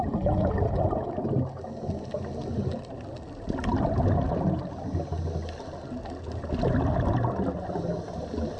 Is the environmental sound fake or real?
real